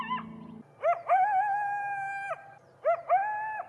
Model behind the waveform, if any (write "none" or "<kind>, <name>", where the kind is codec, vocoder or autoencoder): none